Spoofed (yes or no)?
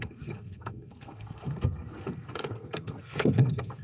yes